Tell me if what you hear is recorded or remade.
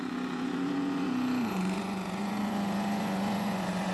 remade